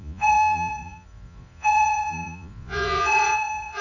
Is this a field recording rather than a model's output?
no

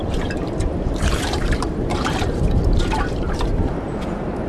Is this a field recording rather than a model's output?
no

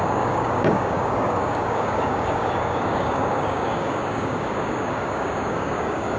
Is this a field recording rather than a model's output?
no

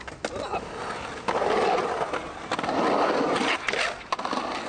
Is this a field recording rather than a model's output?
yes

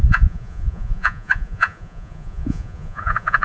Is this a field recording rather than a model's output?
no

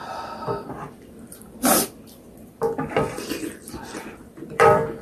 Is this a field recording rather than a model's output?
no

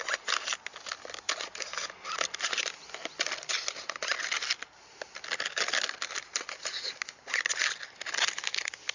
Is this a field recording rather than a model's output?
yes